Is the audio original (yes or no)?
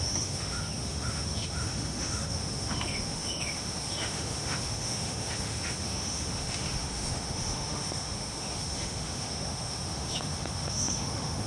no